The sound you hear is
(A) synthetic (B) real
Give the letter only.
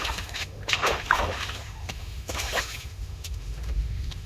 A